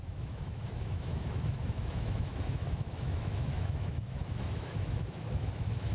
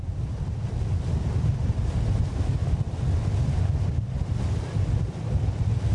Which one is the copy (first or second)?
first